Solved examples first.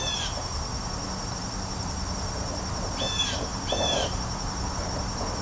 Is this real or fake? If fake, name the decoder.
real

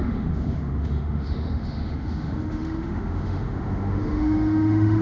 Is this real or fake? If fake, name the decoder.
fake, autoencoder, DAC-VAE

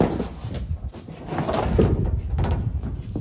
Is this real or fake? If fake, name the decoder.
real